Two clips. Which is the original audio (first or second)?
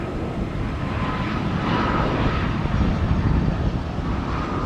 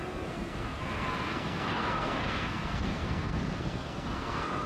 first